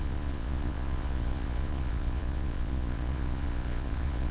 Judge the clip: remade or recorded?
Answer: remade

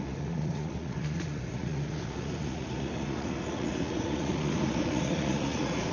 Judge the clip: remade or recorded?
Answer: remade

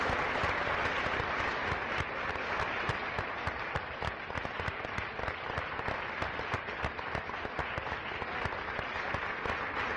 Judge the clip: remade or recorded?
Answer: recorded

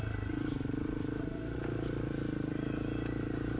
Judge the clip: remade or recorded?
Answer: recorded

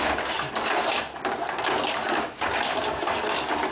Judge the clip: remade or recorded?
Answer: recorded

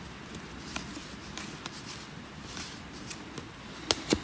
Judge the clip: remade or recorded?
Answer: recorded